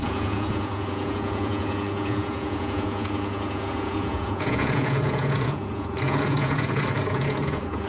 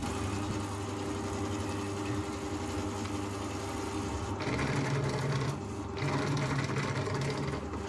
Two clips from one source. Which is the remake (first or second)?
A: first